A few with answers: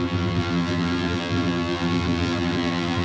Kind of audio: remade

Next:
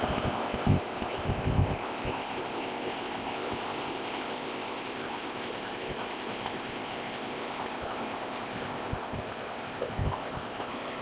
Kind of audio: remade